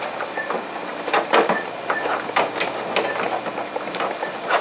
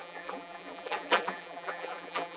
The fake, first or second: second